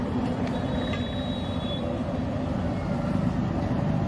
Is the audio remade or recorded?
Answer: recorded